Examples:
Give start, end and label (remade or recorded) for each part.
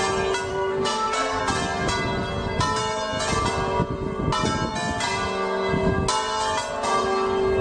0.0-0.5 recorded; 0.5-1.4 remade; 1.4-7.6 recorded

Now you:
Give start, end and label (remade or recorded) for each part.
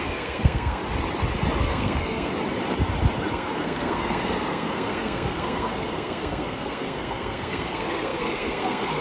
0.0-0.8 remade; 0.8-1.6 recorded; 1.6-2.3 remade; 2.3-3.3 recorded; 3.3-9.0 remade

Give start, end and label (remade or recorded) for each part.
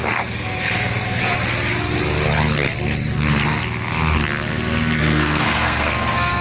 0.0-1.2 remade; 1.2-5.0 recorded; 5.0-6.4 remade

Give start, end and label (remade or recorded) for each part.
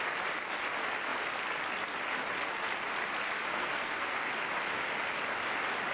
0.0-3.5 recorded; 3.5-4.3 remade; 4.3-5.9 recorded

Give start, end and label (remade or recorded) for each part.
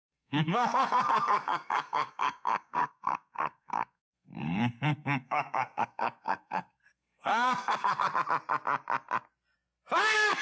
0.0-8.1 remade; 8.1-10.0 recorded; 10.0-10.4 remade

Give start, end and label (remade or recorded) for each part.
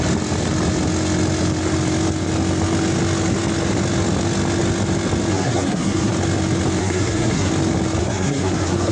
0.0-5.3 recorded; 5.3-6.1 remade; 6.1-6.8 recorded; 6.8-7.5 remade; 7.5-8.0 recorded; 8.0-8.9 remade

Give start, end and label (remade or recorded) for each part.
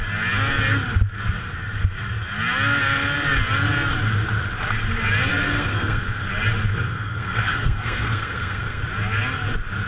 0.0-5.3 recorded; 5.3-6.3 remade; 6.3-6.7 recorded; 6.7-8.8 remade; 8.8-9.9 recorded